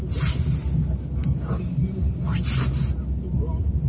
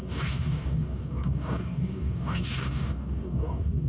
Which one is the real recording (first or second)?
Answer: first